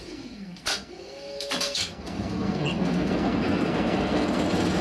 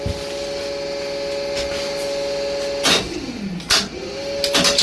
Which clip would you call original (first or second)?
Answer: second